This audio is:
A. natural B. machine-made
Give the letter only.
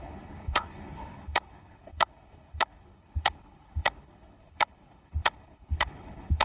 B